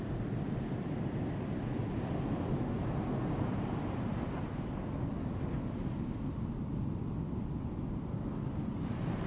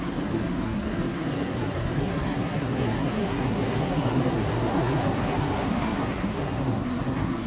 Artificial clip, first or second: second